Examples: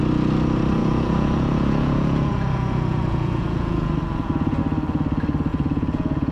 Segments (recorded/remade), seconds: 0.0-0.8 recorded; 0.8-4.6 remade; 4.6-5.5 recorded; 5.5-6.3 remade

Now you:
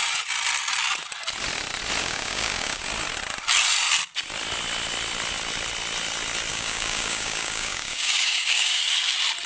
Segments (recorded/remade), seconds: 0.0-2.0 recorded; 2.0-2.8 remade; 2.8-6.5 recorded; 6.5-8.8 remade; 8.8-9.5 recorded

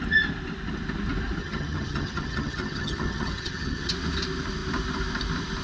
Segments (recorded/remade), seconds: 0.0-1.4 recorded; 1.4-3.9 remade; 3.9-5.6 recorded

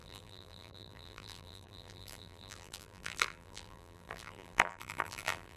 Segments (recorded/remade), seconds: 0.0-5.6 remade

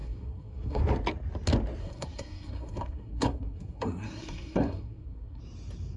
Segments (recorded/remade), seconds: 0.0-0.8 remade; 0.8-1.8 recorded; 1.8-5.4 remade; 5.4-6.0 recorded

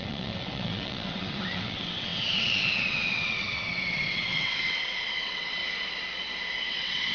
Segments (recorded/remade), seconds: 0.0-5.6 remade; 5.6-6.6 recorded; 6.6-7.1 remade

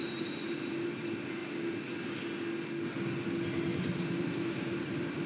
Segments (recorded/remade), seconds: 0.0-1.4 remade; 1.4-4.2 recorded; 4.2-5.3 remade